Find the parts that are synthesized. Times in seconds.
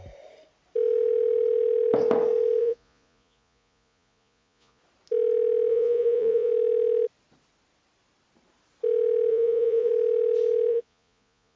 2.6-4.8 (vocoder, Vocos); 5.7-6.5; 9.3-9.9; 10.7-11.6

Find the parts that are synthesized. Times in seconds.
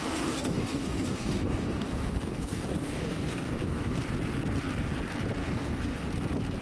0.0-4.0 (codec, DAC); 5.4-6.1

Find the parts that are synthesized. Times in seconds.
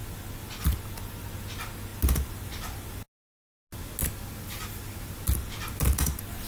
none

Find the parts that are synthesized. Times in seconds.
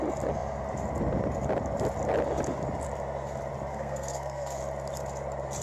3.7-4.6 (codec, SNAC)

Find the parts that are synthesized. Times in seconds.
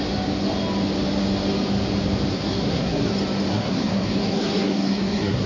2.3-3.1 (codec, SNAC); 3.5-5.5